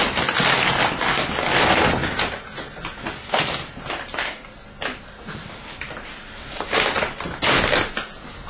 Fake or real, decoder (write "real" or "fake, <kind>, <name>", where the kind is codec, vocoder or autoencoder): real